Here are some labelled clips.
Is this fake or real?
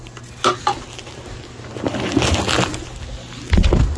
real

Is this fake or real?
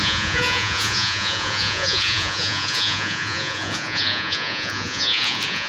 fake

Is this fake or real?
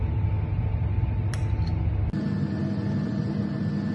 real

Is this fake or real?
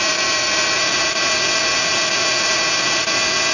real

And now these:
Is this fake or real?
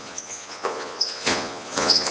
fake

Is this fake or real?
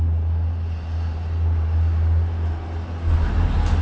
real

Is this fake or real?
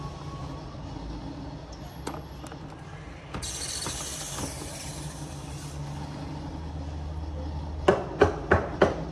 real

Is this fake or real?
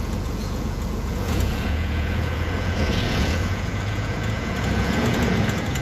fake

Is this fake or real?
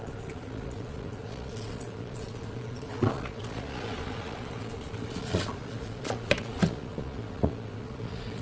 fake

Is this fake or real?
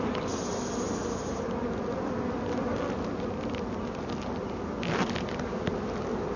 real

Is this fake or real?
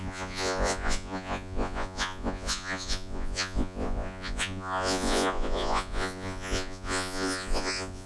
fake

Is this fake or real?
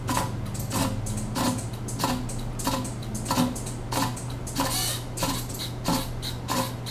real